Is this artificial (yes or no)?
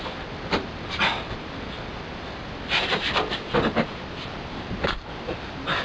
yes